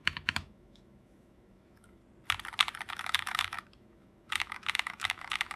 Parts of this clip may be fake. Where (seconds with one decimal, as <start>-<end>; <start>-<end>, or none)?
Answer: 0.0-2.0; 2.9-5.6